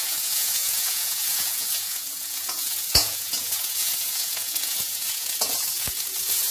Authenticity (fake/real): fake